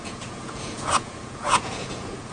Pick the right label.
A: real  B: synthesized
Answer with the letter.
B